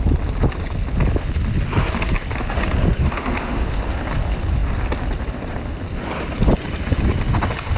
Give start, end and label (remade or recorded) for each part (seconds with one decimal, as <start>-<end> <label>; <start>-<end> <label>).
0.0-3.0 recorded; 3.0-3.8 remade; 3.8-7.8 recorded